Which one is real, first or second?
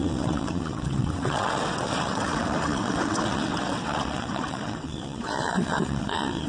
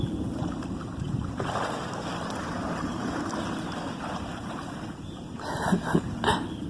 second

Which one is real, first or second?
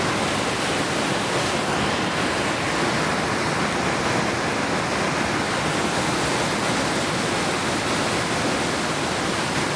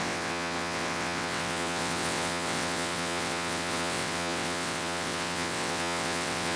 first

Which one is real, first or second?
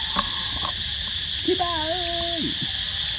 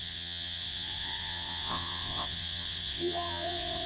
first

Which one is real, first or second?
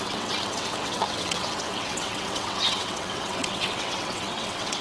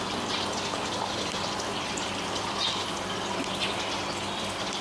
second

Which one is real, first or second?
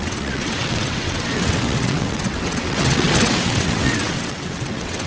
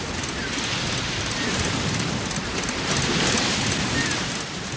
second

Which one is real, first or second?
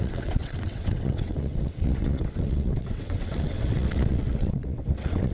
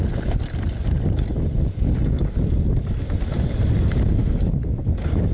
second